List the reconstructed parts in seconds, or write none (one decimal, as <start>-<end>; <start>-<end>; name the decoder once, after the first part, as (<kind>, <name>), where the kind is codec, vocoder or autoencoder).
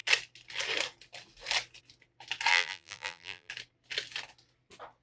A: 2.5-3.5 (vocoder, BigVGAN v2)